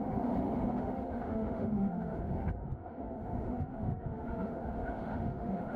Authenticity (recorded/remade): remade